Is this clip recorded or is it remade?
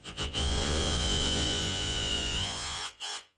remade